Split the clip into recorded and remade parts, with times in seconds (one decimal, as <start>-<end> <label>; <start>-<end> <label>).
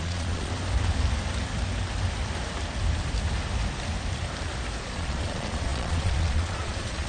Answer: 0.0-0.5 remade; 0.5-4.8 recorded; 4.8-7.1 remade